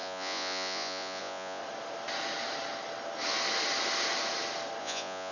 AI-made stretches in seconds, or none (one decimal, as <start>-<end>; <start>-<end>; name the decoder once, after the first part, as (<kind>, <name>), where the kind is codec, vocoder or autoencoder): 0.0-1.6 (vocoder, Vocos); 4.8-5.3